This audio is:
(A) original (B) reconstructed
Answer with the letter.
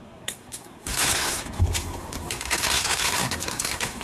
B